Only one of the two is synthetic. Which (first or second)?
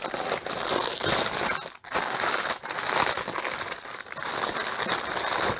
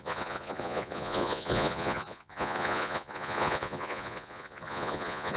second